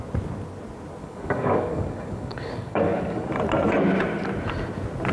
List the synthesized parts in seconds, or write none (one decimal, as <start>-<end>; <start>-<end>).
1.0-3.3